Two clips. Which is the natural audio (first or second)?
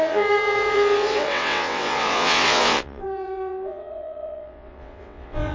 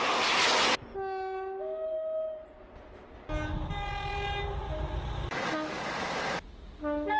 second